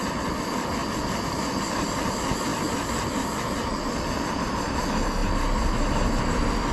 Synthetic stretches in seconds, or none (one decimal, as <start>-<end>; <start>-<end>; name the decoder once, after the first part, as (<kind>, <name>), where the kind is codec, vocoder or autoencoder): none